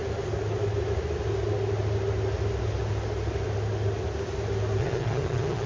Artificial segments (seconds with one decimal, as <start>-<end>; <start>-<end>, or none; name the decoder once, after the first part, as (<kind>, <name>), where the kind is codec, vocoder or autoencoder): 4.8-5.7 (vocoder, HiFi-GAN)